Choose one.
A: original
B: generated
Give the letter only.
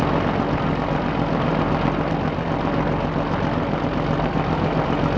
B